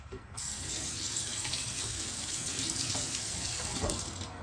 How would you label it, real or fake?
fake